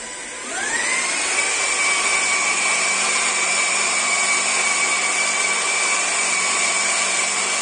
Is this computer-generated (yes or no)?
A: yes